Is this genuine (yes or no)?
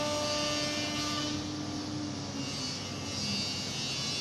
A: yes